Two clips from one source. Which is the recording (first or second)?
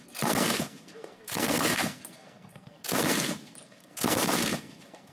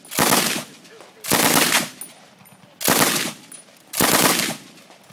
second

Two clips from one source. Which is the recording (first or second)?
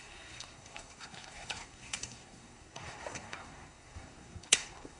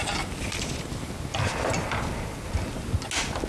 second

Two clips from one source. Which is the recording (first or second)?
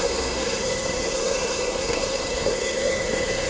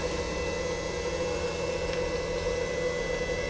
second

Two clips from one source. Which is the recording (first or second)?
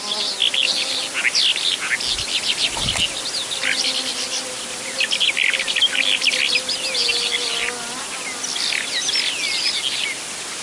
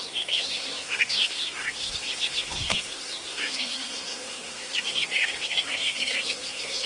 first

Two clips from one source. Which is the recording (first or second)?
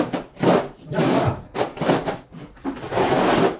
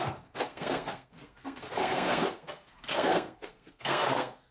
first